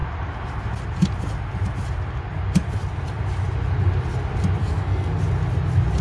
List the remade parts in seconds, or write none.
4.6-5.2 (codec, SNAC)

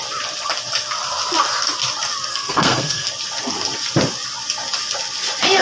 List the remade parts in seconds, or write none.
2.3-3.1 (codec, SNAC)

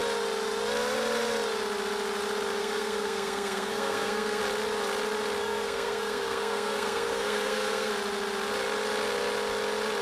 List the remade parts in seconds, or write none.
2.6-4.4 (codec, SNAC); 5.4-7.9

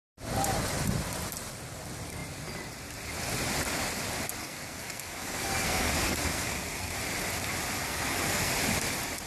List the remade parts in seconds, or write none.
4.4-6.9 (codec, SNAC); 7.8-8.5